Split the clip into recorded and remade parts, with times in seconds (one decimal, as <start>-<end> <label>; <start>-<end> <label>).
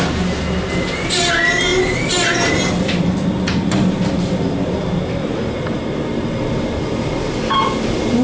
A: 0.0-6.1 recorded; 6.1-7.1 remade; 7.1-8.2 recorded